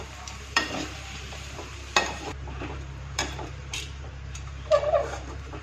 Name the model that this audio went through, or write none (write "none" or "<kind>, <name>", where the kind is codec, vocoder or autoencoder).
vocoder, BigVGAN v2